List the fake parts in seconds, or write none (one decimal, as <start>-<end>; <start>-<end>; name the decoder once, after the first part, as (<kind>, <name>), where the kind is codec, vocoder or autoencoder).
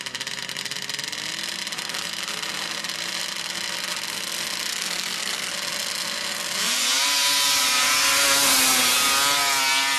4.7-5.5 (codec, SNAC)